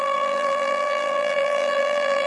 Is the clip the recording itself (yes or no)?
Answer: no